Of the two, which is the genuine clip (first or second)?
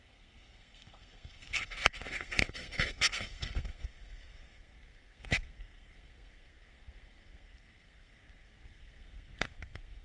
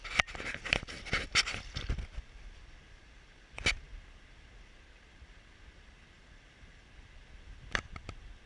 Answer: second